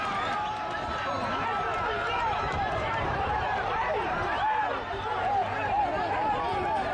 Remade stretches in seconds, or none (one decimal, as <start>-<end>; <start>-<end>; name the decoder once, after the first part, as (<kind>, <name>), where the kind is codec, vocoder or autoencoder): 1.7-5.8 (vocoder, BigVGAN v2)